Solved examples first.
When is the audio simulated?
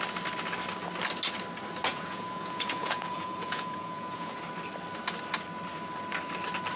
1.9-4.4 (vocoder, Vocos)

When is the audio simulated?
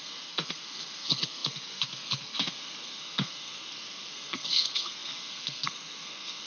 0.0-6.5 (codec, SNAC)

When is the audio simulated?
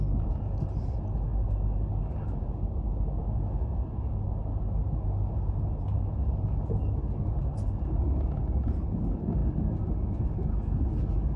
none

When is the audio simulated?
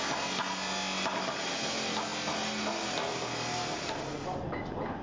none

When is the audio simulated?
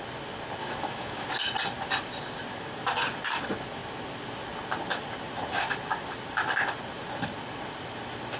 0.6-1.3 (autoencoder, DAC-VAE)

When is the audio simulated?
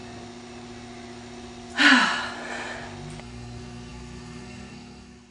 3.2-5.3 (codec, SNAC)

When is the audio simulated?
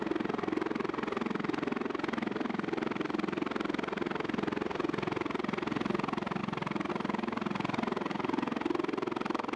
none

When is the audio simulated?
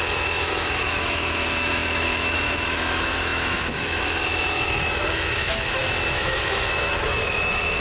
0.0-7.8 (autoencoder, DAC-VAE)